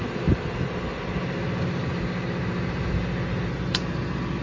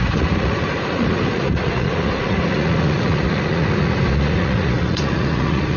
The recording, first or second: first